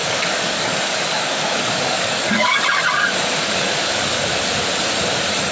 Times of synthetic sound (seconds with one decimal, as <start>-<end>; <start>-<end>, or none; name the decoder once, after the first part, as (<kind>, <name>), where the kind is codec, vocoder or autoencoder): 0.0-2.6 (codec, DAC); 3.3-4.3